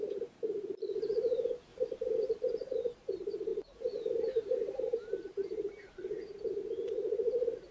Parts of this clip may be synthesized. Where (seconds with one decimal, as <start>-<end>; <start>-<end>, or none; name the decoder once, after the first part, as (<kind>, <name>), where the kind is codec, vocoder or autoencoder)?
0.0-7.7 (vocoder, BigVGAN v2)